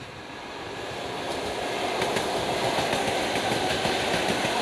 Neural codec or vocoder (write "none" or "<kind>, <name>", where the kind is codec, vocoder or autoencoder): none